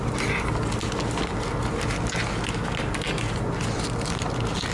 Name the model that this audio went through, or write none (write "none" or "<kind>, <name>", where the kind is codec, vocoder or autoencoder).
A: none